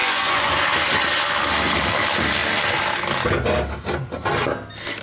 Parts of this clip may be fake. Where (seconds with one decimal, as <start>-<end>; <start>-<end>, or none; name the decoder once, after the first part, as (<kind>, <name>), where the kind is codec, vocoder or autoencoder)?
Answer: 0.0-0.6 (vocoder, Vocos)